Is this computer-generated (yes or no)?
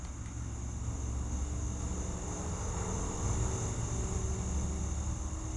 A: no